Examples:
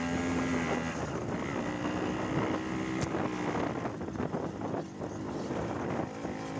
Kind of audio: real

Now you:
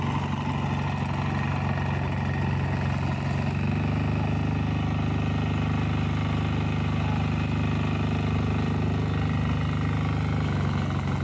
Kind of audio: real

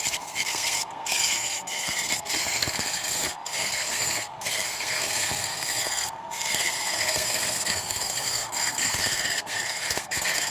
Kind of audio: fake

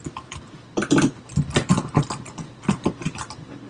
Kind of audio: fake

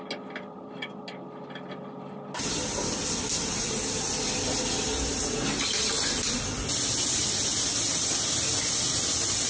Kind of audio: real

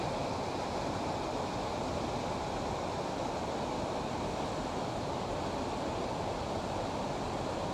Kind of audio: real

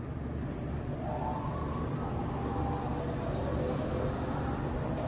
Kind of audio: real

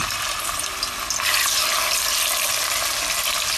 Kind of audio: real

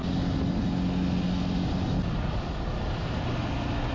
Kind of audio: real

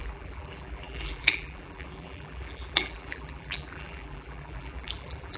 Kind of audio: fake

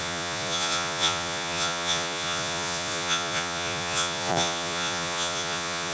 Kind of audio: fake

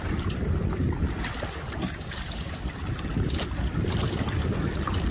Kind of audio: fake